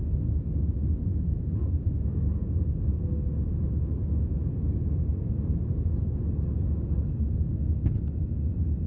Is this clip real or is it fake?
real